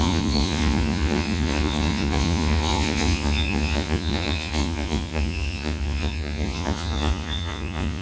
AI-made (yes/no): yes